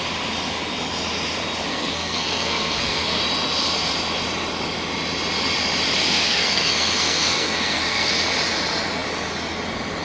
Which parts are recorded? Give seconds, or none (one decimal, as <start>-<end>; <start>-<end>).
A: 0.0-1.7; 3.2-6.0; 8.1-10.0